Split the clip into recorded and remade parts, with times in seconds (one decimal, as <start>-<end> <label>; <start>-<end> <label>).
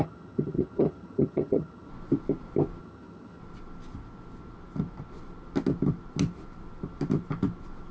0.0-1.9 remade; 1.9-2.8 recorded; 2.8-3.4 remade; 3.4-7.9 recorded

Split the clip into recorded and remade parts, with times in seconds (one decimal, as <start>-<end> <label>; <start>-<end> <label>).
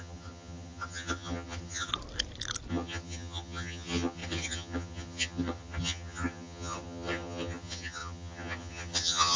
0.0-1.9 remade; 1.9-2.7 recorded; 2.7-9.4 remade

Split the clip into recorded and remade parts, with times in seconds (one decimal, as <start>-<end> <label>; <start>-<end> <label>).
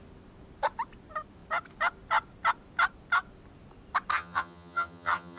0.0-4.1 recorded; 4.1-5.4 remade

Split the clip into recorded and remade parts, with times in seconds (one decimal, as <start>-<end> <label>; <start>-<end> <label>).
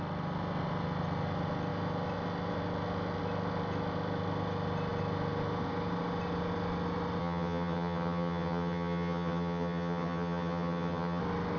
0.0-7.2 recorded; 7.2-11.2 remade; 11.2-11.6 recorded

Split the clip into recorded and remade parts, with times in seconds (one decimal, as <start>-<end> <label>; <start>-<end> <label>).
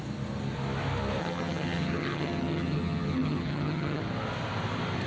0.0-1.2 recorded; 1.2-4.0 remade; 4.0-5.1 recorded